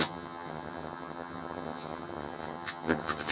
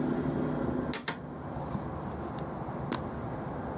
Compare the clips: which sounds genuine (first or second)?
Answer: second